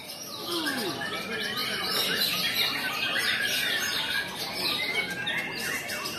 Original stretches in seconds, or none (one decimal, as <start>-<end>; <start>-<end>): 0.7-1.6; 4.0-6.2